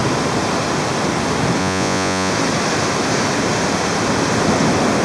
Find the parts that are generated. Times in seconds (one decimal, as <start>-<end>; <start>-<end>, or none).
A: 1.6-2.3